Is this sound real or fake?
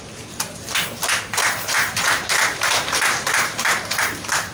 fake